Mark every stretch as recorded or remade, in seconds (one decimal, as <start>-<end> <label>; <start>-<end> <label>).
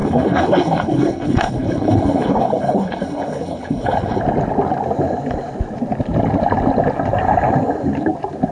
0.0-4.2 remade; 4.2-8.5 recorded